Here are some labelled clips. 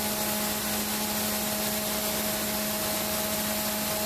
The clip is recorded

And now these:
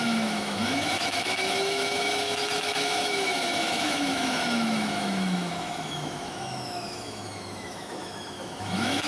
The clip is remade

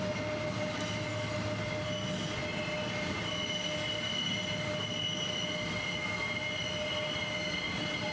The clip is recorded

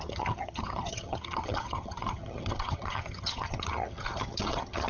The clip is remade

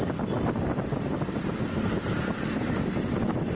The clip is recorded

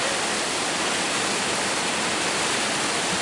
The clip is remade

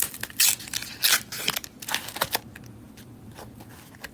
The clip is recorded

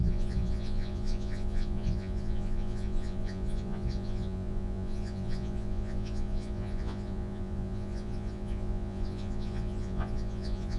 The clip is remade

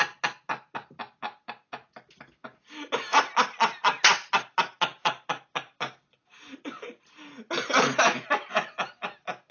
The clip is recorded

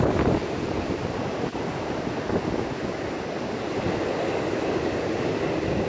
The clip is recorded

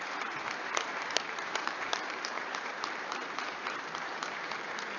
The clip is remade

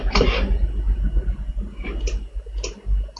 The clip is recorded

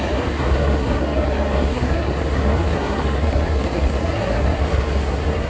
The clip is remade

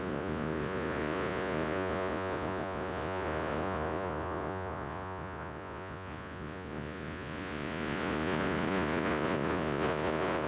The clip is remade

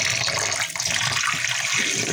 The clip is recorded